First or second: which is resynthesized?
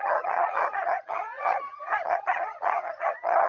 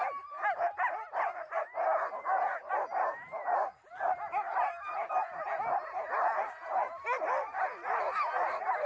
first